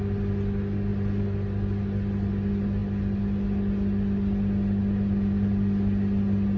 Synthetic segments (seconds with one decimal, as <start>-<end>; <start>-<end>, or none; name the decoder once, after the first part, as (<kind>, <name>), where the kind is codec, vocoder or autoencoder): none